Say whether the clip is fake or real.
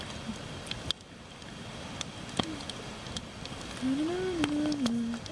real